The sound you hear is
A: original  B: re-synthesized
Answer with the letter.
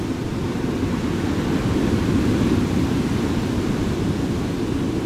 A